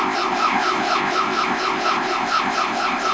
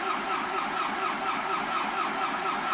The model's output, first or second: first